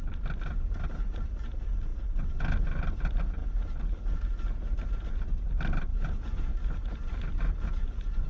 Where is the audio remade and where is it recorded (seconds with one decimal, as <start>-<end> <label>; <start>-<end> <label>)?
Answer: 0.0-5.9 recorded; 5.9-6.5 remade; 6.5-8.3 recorded